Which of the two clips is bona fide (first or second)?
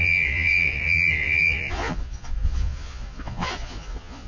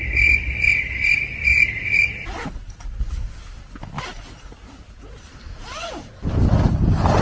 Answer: second